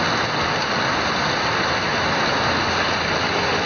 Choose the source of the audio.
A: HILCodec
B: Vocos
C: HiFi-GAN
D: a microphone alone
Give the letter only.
D